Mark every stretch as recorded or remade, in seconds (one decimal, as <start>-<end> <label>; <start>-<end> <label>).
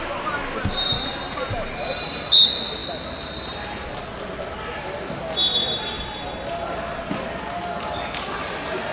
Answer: 0.0-8.9 recorded